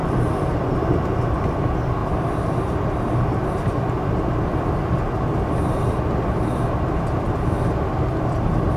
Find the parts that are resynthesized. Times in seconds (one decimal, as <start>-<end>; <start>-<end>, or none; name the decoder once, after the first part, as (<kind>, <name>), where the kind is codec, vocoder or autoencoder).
0.0-0.7 (vocoder, BigVGAN v2)